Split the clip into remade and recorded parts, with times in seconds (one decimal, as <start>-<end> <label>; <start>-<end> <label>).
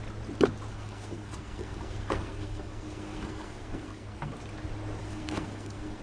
0.0-0.7 recorded; 0.7-4.3 remade; 4.3-5.0 recorded; 5.0-6.0 remade